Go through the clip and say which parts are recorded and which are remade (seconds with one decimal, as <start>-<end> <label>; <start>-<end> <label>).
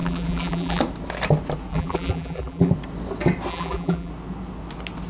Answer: 0.0-0.8 remade; 0.8-1.7 recorded; 1.7-2.7 remade; 2.7-3.5 recorded; 3.5-4.1 remade; 4.1-5.1 recorded